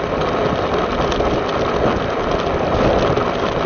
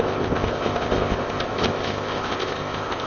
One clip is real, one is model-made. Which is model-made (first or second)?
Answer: second